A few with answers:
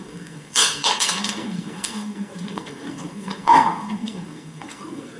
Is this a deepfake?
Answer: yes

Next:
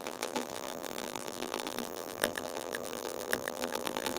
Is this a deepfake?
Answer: yes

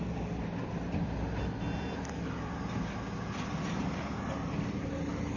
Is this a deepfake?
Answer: no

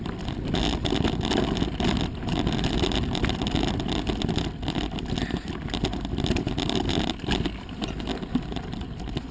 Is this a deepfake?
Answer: no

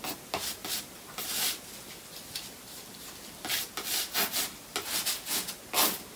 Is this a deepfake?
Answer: no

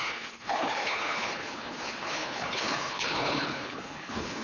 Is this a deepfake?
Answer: yes